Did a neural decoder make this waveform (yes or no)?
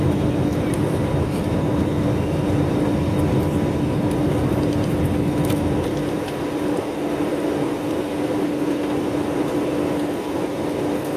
no